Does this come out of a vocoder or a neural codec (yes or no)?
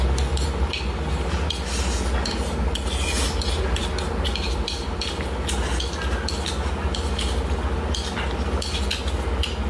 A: no